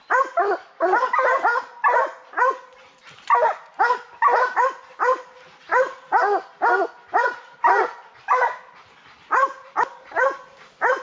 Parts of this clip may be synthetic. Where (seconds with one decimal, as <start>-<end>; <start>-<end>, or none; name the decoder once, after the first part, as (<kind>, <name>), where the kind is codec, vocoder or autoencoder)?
none